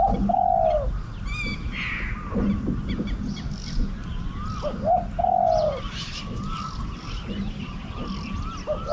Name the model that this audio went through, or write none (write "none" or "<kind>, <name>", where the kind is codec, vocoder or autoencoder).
none